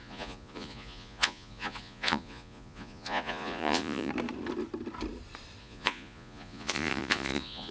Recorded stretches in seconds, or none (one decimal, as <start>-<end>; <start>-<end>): 4.1-5.6